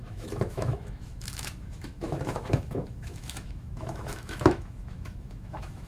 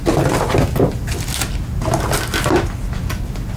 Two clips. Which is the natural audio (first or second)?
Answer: second